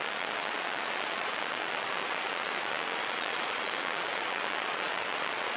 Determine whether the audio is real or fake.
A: fake